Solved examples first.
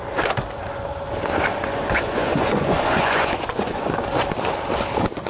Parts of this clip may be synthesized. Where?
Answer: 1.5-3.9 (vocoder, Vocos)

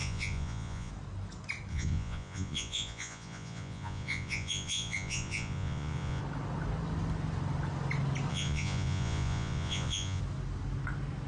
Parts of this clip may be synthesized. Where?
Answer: 0.0-0.9 (vocoder, Vocos); 1.7-6.2; 8.3-10.2